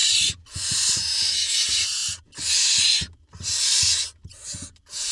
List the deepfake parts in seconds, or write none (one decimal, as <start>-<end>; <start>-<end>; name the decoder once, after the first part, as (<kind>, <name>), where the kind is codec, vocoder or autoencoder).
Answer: none